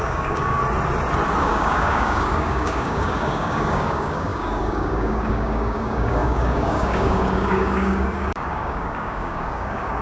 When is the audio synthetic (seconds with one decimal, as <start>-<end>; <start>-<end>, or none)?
0.0-0.6; 1.4-10.0